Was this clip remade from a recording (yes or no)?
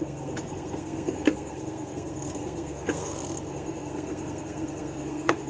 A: yes